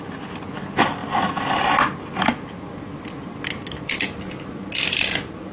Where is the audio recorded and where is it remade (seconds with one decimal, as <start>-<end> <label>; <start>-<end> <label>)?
0.0-5.5 recorded